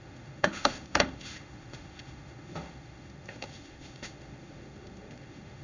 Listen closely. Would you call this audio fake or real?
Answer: fake